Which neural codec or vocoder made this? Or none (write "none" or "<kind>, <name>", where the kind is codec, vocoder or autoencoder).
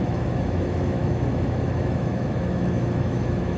autoencoder, DAC-VAE